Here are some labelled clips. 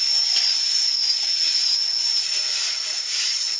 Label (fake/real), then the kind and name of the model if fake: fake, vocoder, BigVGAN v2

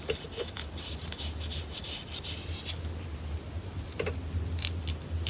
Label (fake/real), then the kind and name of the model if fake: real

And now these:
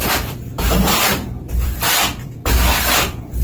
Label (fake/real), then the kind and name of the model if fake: fake, vocoder, BigVGAN v2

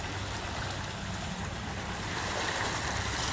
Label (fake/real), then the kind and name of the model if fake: real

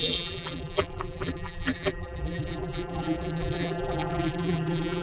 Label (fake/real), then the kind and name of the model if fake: fake, vocoder, BigVGAN v2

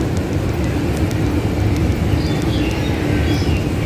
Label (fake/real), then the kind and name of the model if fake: real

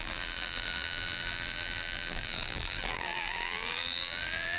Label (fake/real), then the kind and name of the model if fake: fake, vocoder, BigVGAN v2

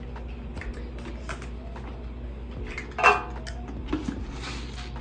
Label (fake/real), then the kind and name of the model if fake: real